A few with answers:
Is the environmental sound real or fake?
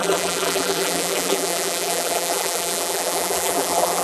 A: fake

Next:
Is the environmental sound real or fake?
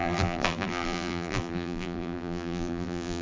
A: fake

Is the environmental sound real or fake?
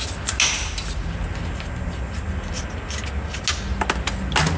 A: real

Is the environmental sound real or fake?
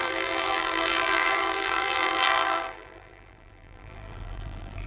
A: fake